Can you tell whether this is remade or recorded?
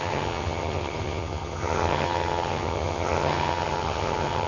remade